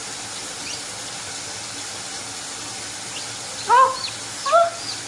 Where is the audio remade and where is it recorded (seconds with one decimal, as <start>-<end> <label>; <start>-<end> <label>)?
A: 0.0-5.1 recorded